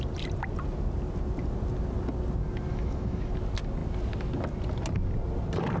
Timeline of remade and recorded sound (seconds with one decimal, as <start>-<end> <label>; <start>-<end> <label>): 0.0-2.7 recorded; 2.7-3.3 remade; 3.3-5.8 recorded